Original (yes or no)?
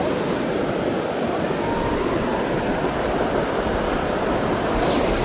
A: yes